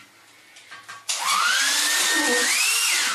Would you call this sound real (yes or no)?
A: yes